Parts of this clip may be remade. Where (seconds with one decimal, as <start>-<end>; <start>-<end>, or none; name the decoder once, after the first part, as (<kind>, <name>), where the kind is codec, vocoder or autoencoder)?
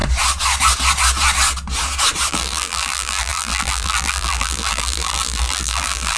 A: 2.3-6.2 (vocoder, BigVGAN v2)